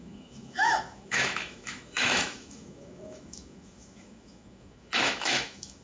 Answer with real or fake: fake